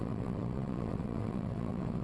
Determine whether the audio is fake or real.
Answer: fake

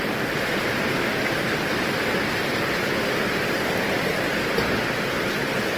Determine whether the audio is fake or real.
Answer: real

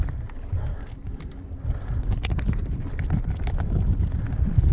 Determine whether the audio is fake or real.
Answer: real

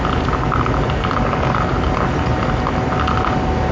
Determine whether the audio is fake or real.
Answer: real